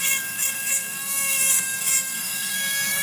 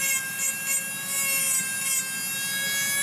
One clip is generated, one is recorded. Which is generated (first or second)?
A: first